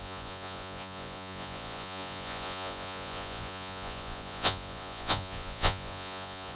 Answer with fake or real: fake